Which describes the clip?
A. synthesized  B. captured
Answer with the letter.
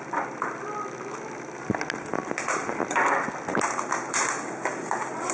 B